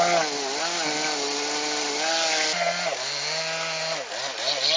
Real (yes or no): yes